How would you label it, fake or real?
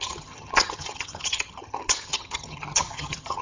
fake